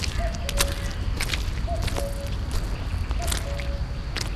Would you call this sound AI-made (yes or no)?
no